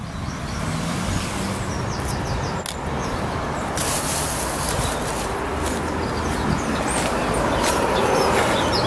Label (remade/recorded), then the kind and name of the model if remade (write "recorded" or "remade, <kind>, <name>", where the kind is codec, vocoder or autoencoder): recorded